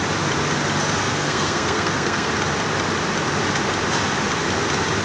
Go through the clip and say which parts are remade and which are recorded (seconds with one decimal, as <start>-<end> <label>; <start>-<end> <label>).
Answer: 0.0-1.0 recorded; 1.0-2.3 remade; 2.3-5.0 recorded